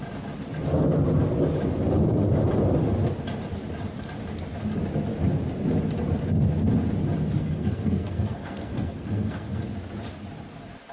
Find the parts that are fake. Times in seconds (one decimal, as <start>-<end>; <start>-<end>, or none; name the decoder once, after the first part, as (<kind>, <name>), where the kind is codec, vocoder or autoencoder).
7.4-9.6 (codec, SNAC)